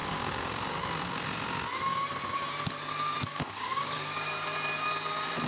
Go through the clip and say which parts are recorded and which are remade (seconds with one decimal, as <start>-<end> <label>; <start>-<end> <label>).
0.0-0.8 remade; 0.8-3.3 recorded; 3.3-4.3 remade; 4.3-5.5 recorded